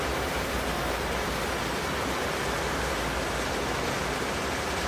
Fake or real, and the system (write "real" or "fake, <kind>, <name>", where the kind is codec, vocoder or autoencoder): fake, vocoder, BigVGAN v2